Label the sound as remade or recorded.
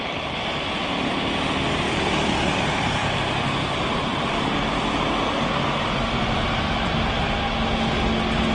recorded